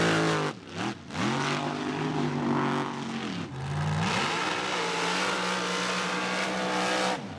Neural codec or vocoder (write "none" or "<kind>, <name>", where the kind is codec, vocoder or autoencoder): none